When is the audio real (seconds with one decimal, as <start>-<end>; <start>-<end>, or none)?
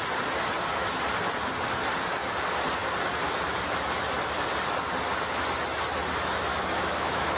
0.0-6.5